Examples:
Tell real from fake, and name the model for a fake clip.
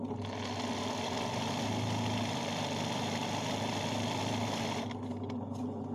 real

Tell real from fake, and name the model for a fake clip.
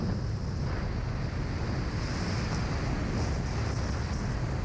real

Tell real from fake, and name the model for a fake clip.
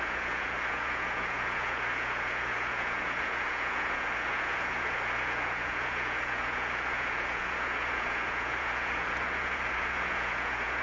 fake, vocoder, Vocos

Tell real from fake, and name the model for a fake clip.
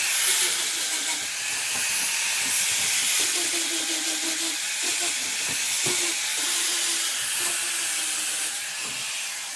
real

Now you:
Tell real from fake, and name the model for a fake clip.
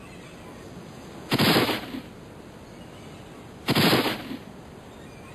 real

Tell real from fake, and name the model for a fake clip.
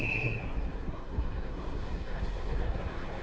fake, codec, SNAC